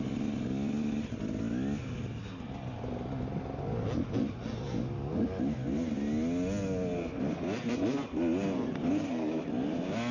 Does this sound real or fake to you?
real